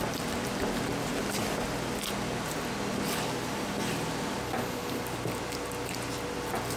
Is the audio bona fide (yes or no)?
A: yes